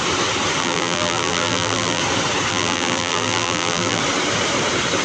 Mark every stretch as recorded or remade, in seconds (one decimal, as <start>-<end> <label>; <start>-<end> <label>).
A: 0.0-0.6 recorded; 0.6-2.0 remade; 2.0-2.5 recorded; 2.5-4.0 remade; 4.0-5.0 recorded